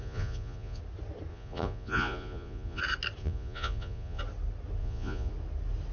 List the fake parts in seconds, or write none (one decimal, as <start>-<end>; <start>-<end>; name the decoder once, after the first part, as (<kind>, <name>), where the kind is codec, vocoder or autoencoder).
0.0-0.8 (vocoder, Vocos); 1.3-2.8; 3.2-4.2; 4.8-5.3